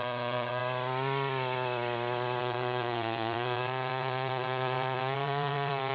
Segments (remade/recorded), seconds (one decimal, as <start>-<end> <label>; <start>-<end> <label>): 0.0-0.6 remade; 0.6-2.4 recorded; 2.4-5.9 remade